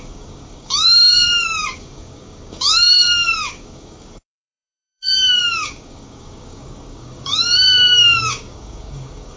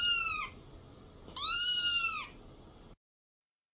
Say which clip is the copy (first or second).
first